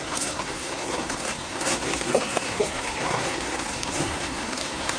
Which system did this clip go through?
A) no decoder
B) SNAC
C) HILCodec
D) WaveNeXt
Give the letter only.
B